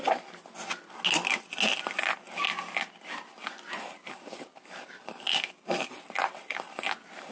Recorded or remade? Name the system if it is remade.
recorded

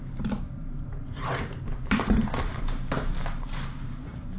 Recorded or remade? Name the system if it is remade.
remade, vocoder, BigVGAN v2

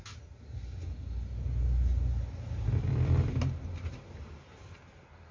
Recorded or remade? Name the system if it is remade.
recorded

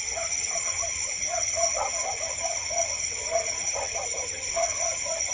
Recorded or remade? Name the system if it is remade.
remade, vocoder, HiFi-GAN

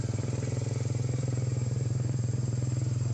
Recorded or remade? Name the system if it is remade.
remade, vocoder, BigVGAN v2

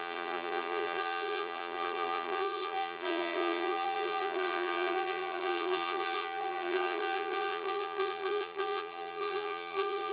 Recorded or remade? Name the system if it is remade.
remade, vocoder, BigVGAN v2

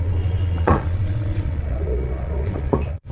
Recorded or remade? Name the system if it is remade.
remade, vocoder, Vocos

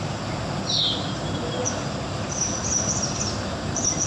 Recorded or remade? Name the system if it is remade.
recorded